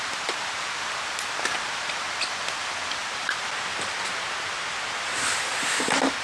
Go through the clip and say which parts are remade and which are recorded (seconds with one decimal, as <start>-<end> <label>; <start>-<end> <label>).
0.0-6.2 recorded